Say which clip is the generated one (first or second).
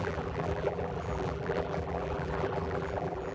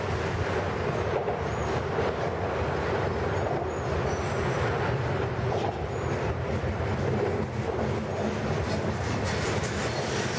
first